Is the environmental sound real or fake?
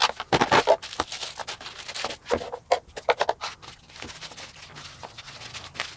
real